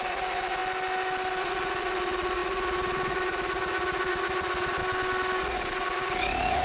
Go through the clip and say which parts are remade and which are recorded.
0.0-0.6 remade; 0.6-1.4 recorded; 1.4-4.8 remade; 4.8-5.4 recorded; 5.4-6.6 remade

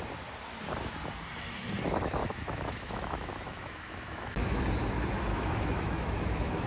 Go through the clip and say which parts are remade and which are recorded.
0.0-2.2 recorded; 2.2-4.6 remade; 4.6-5.3 recorded; 5.3-6.7 remade

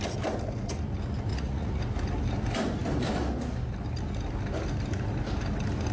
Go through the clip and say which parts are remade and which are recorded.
0.0-1.3 recorded; 1.3-1.8 remade; 1.8-5.9 recorded